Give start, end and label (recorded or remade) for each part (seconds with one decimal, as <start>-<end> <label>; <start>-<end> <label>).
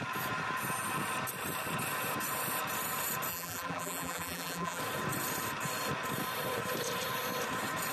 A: 0.0-3.3 recorded; 3.3-4.8 remade; 4.8-7.9 recorded